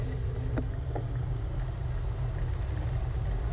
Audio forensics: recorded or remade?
recorded